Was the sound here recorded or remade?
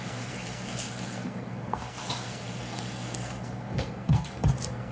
remade